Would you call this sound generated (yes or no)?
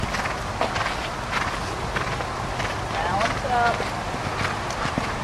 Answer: no